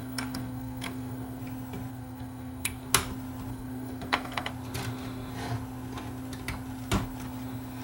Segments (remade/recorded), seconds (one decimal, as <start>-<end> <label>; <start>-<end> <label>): 0.0-1.4 remade; 1.4-1.9 recorded; 1.9-2.9 remade; 2.9-3.5 recorded; 3.5-4.5 remade; 4.5-7.8 recorded